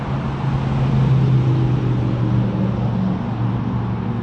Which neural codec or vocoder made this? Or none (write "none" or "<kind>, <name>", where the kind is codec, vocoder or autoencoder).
none